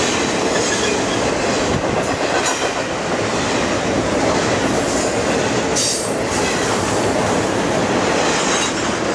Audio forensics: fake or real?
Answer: real